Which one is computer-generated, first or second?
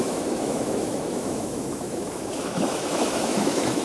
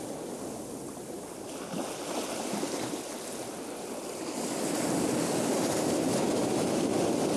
first